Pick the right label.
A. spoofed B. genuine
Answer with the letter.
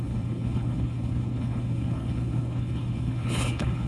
A